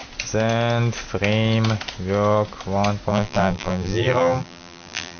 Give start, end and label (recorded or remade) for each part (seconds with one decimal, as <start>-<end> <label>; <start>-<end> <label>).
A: 0.0-3.1 recorded; 3.1-5.2 remade

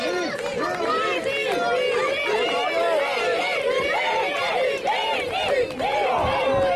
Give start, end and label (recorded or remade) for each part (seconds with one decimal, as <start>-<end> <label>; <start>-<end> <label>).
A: 0.0-5.9 recorded; 5.9-6.8 remade

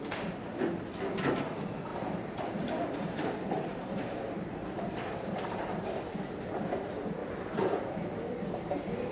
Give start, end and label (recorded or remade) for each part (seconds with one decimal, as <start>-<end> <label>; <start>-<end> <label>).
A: 0.0-1.9 recorded; 1.9-5.8 remade; 5.8-7.2 recorded; 7.2-7.8 remade; 7.8-9.1 recorded

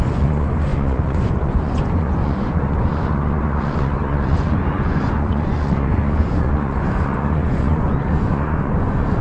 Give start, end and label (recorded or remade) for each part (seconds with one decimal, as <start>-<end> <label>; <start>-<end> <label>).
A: 0.0-9.2 remade

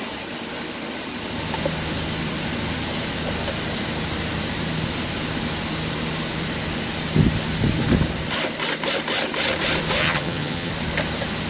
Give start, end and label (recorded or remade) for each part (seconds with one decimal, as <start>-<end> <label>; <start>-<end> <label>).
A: 0.0-10.0 recorded; 10.0-10.7 remade; 10.7-11.5 recorded

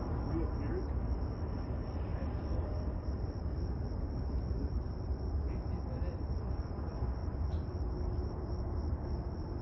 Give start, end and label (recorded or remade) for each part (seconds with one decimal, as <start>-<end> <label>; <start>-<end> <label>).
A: 0.0-2.1 recorded; 2.1-6.7 remade; 6.7-7.2 recorded; 7.2-7.9 remade; 7.9-9.6 recorded